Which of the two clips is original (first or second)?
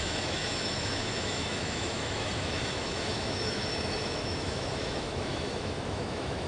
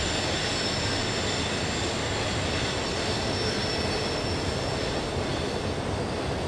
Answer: second